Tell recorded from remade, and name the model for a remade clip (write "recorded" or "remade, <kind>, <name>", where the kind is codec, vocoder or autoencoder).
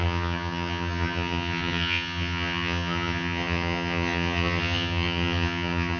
remade, vocoder, HiFi-GAN